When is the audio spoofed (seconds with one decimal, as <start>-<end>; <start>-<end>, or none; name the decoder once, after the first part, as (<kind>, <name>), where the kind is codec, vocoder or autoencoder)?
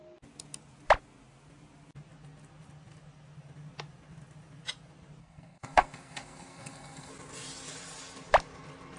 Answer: 5.2-7.1 (codec, SNAC)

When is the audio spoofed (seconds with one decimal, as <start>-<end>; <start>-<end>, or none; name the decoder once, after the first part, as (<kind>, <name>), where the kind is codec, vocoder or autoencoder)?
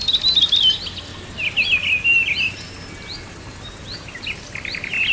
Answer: none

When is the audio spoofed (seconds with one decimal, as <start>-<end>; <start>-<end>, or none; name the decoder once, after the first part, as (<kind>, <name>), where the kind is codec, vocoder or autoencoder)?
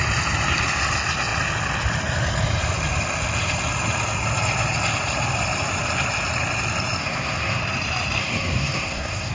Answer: 7.0-7.6 (codec, SNAC); 8.2-9.3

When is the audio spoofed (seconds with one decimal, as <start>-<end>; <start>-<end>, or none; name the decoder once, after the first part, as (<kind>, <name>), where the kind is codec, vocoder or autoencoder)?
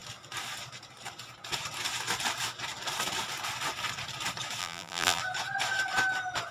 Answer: 4.6-5.2 (vocoder, BigVGAN v2)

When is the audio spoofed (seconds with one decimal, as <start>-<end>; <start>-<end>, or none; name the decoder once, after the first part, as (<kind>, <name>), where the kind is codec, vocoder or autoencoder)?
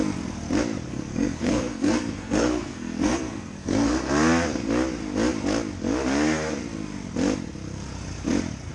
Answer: 0.9-4.1 (codec, SNAC)